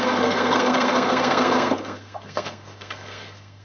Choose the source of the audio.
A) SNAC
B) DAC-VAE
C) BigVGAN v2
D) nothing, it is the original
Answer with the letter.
A